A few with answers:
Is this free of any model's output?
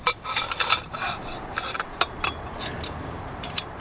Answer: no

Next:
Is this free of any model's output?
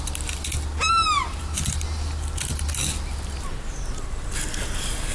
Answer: yes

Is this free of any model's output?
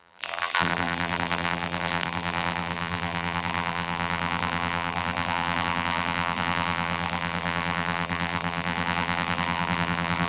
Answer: no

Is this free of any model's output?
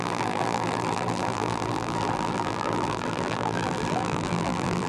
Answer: no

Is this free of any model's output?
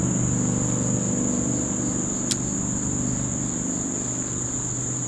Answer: yes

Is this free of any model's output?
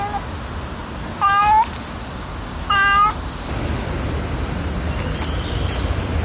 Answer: yes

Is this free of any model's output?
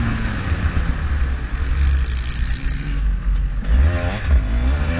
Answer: yes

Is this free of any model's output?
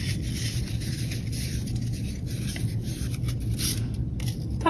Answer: no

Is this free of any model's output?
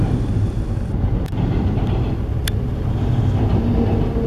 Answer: yes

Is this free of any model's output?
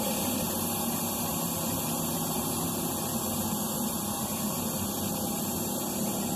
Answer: yes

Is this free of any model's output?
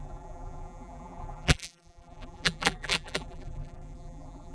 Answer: no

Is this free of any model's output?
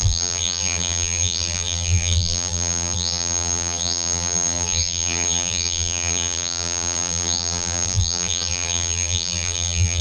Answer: no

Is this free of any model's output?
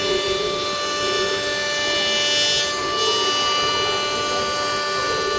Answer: yes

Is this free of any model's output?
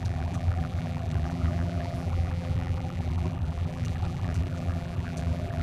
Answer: no